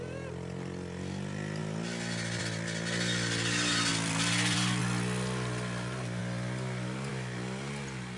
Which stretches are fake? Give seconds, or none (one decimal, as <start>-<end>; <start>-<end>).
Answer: 3.9-4.8